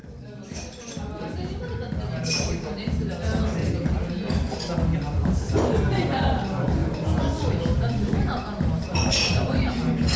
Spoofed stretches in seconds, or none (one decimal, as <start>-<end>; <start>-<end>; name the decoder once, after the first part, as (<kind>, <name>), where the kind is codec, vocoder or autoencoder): 3.6-4.1 (vocoder, BigVGAN v2)